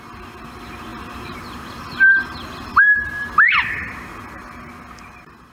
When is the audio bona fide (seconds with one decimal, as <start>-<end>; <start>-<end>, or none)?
0.0-5.5